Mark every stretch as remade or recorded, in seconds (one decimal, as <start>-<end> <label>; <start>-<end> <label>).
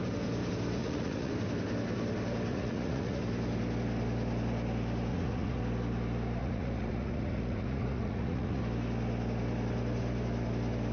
0.0-0.8 recorded; 0.8-1.3 remade; 1.3-2.5 recorded; 2.5-3.2 remade; 3.2-5.1 recorded; 5.1-5.6 remade; 5.6-6.4 recorded; 6.4-8.6 remade; 8.6-10.9 recorded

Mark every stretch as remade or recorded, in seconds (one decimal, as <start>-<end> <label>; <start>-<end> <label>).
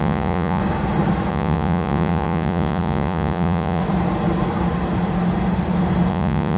0.0-0.6 remade; 0.6-1.3 recorded; 1.3-3.8 remade; 3.8-6.1 recorded; 6.1-6.6 remade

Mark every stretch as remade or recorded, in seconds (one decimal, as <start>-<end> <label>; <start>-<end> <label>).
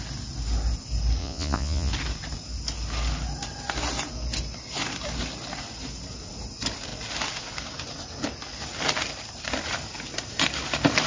0.0-1.2 recorded; 1.2-1.9 remade; 1.9-11.1 recorded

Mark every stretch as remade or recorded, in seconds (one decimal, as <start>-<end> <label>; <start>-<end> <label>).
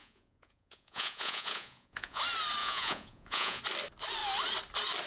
0.0-2.2 remade; 2.2-2.6 recorded; 2.6-3.6 remade; 3.6-5.1 recorded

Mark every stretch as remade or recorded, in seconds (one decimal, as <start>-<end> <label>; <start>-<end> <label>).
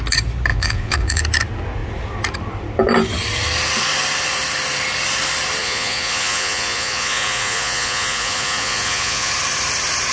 0.0-0.5 recorded; 0.5-1.2 remade; 1.2-5.6 recorded; 5.6-9.3 remade; 9.3-10.1 recorded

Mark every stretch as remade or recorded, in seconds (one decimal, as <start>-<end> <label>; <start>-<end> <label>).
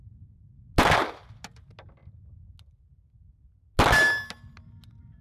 0.0-5.2 recorded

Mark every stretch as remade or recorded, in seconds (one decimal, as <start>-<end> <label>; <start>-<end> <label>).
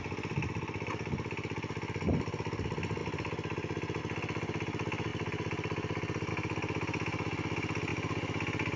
0.0-8.8 recorded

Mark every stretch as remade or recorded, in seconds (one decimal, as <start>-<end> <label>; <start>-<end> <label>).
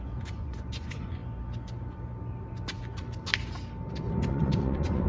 0.0-1.2 remade; 1.2-4.3 recorded; 4.3-5.1 remade